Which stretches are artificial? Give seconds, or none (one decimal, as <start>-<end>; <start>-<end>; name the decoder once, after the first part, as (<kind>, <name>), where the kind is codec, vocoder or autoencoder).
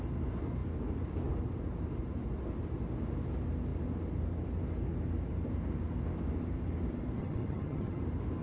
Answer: 7.2-8.0 (vocoder, HiFi-GAN)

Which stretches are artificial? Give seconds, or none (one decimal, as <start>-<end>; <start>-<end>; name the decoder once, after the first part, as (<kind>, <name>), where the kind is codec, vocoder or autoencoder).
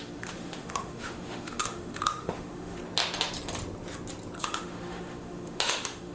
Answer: 0.0-2.8 (autoencoder, DAC-VAE); 4.4-6.1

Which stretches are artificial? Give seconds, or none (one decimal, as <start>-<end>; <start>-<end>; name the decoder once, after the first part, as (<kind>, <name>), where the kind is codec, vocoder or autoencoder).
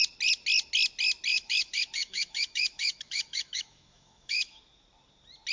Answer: 1.3-4.6 (autoencoder, DAC-VAE)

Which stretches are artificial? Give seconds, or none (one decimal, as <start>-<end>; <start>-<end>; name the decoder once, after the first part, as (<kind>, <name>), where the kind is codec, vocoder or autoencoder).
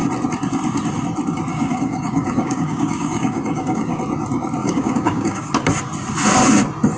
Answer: 1.5-4.0 (codec, DAC); 4.6-5.5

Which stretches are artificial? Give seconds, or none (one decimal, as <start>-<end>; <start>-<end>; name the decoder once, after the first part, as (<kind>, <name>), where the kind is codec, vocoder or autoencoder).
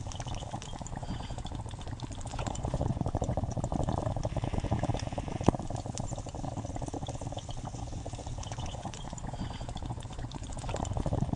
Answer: 1.0-1.6 (vocoder, Vocos); 2.3-3.6; 7.7-10.7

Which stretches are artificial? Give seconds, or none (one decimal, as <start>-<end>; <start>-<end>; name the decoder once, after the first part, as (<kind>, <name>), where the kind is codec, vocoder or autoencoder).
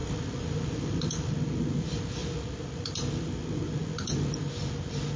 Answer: none